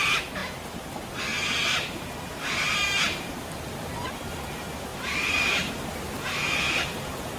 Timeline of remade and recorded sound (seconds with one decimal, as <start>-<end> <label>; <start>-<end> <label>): 0.0-1.3 recorded; 1.3-3.3 remade; 3.3-4.9 recorded; 4.9-5.7 remade; 5.7-7.4 recorded